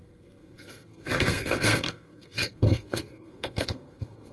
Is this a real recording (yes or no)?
no